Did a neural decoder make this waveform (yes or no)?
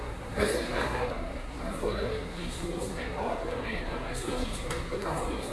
yes